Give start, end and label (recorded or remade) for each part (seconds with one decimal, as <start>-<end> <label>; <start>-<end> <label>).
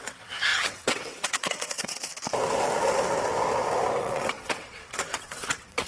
0.0-2.1 remade; 2.1-4.0 recorded; 4.0-5.9 remade